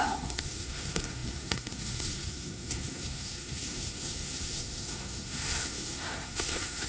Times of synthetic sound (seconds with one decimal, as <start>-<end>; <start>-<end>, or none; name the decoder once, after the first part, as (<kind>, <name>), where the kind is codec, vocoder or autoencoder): 0.0-6.9 (codec, SNAC)